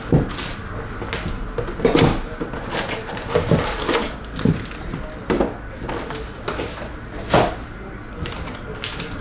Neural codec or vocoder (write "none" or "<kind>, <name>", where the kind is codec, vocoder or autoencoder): none